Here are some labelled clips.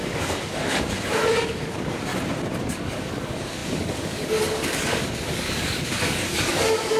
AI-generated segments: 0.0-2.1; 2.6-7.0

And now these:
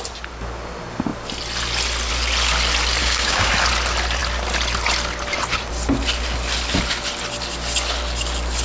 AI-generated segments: 3.0-3.5

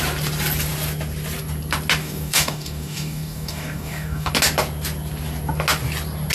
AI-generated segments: 2.0-4.3

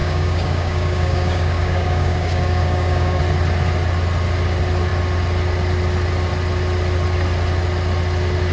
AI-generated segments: 0.0-3.2

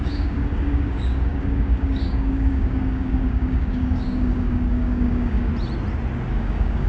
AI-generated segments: 0.0-5.5; 6.3-6.9

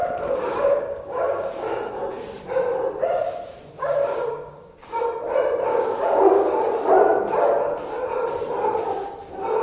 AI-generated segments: 0.0-1.9; 4.1-5.0; 5.7-6.6

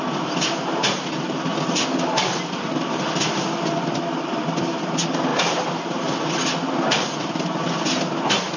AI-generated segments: none

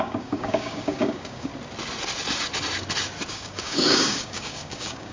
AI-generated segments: 0.0-1.5; 3.3-5.1